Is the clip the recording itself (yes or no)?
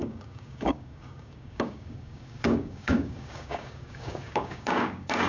no